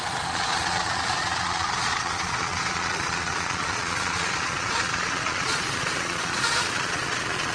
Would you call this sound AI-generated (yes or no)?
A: yes